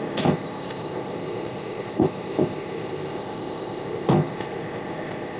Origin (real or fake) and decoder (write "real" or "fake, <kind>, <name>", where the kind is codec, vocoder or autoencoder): fake, codec, ZipCodec